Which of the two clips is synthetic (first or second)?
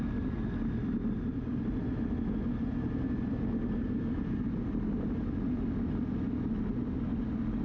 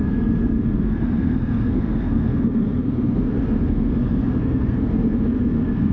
second